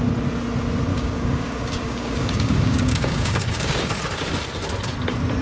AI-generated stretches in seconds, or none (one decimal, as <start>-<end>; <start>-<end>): 0.9-3.9